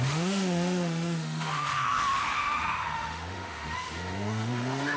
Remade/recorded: remade